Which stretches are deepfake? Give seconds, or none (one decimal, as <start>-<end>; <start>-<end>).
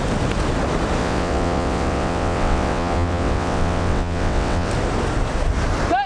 1.0-4.7